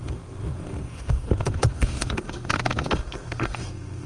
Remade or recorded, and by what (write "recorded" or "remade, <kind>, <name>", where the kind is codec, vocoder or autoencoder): remade, codec, SNAC